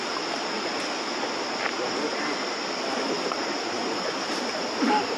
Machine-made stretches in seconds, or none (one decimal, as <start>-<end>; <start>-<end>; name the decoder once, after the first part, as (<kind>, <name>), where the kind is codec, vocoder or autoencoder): 2.1-5.2 (vocoder, BigVGAN v2)